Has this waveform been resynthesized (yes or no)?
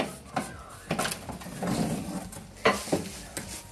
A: no